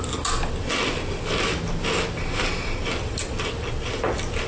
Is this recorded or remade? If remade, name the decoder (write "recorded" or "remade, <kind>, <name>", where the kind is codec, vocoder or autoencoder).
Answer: recorded